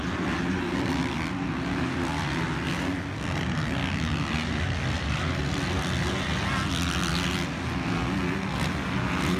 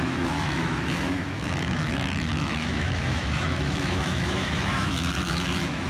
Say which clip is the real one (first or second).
first